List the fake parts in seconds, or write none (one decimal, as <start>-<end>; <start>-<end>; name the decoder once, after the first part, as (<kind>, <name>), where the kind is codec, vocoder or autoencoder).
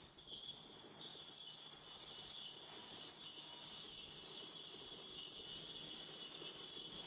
none